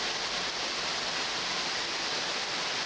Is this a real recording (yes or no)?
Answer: yes